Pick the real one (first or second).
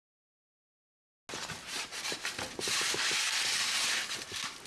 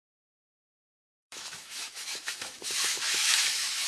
first